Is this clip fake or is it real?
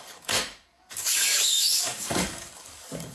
fake